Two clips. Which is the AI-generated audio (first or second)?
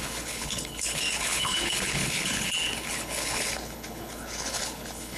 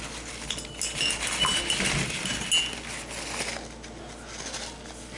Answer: first